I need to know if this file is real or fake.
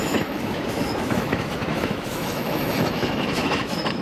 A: fake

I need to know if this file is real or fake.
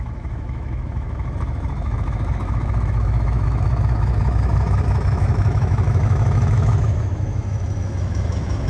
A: fake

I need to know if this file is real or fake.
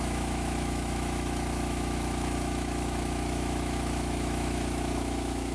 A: fake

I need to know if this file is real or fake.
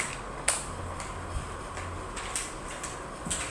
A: real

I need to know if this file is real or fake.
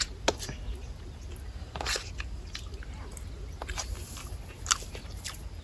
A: real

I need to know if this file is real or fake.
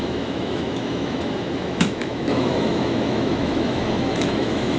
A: fake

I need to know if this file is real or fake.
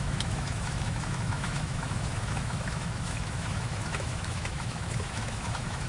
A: fake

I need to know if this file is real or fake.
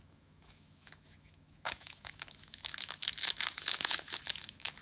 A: fake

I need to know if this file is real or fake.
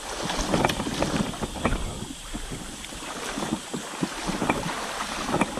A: real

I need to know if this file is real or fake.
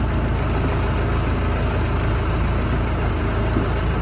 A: real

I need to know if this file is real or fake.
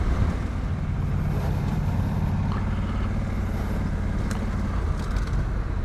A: real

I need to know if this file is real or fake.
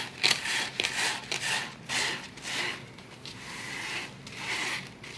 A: real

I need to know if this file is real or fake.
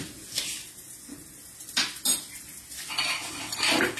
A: real